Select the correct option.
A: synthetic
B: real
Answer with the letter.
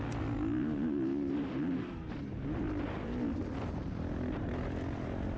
B